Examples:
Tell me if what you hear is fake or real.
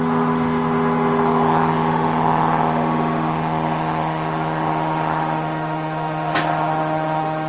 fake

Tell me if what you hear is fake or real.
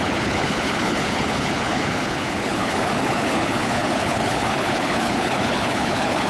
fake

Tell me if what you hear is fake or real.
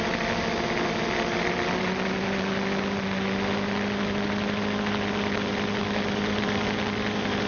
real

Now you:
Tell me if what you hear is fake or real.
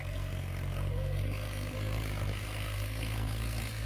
fake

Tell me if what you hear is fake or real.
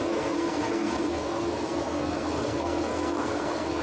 fake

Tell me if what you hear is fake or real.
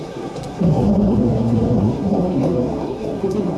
fake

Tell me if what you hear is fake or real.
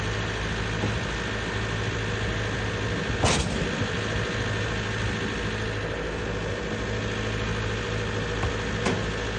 real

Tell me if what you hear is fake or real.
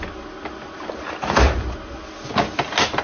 real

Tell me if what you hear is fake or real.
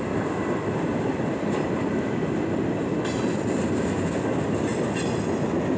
real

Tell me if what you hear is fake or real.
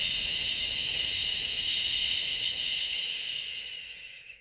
fake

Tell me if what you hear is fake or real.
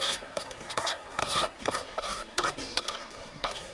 fake